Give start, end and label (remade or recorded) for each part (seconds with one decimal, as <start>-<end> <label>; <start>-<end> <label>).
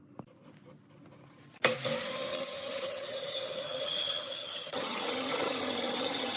0.0-2.3 recorded; 2.3-6.4 remade